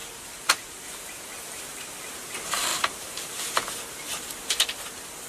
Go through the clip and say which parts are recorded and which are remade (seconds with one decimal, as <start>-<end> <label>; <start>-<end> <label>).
0.0-5.3 remade